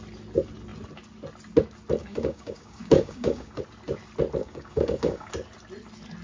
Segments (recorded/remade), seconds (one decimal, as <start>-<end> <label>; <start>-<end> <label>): 0.0-2.0 recorded; 2.0-3.6 remade; 3.6-4.4 recorded; 4.4-5.3 remade; 5.3-6.2 recorded